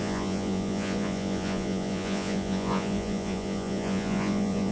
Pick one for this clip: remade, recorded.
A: remade